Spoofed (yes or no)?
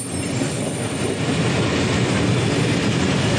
no